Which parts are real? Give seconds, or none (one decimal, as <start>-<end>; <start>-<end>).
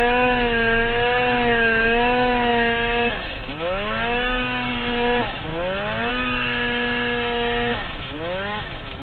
5.5-6.1